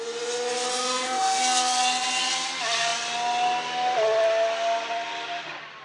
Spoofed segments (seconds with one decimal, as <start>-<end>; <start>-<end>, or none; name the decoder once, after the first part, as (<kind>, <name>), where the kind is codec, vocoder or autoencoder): 0.7-1.4 (autoencoder, DAC-VAE)